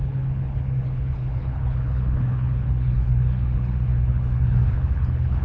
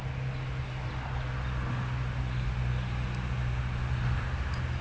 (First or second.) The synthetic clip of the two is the first